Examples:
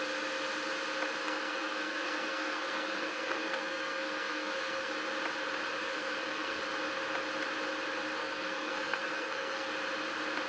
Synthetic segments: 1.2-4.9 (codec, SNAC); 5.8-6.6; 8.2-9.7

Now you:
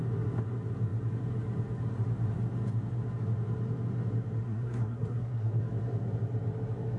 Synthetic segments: 4.4-5.6 (codec, SNAC)

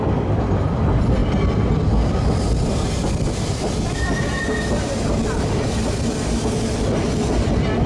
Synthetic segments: none

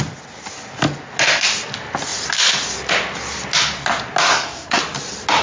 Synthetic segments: 4.3-4.8 (codec, SNAC)

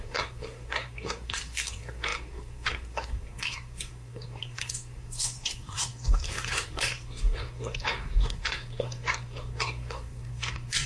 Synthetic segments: 0.0-10.9 (codec, SNAC)